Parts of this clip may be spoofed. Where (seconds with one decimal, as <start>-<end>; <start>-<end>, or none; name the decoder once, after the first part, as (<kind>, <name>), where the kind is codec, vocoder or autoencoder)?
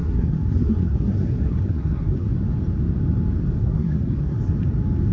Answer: 0.0-2.3 (codec, SNAC); 3.6-4.4